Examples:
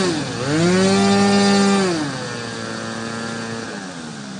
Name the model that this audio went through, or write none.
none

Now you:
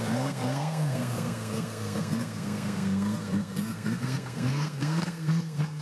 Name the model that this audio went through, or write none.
codec, SNAC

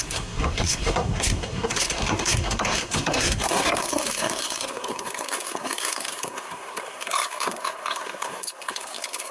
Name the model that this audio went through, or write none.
codec, SNAC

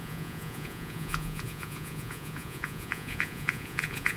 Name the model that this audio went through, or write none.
vocoder, Vocos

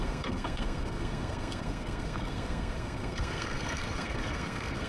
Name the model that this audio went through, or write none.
codec, SNAC